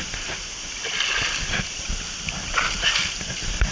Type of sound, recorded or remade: recorded